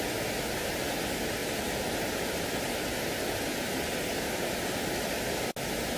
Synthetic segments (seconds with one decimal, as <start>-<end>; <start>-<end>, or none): 1.4-2.4